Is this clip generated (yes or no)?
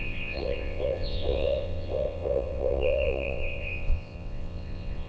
yes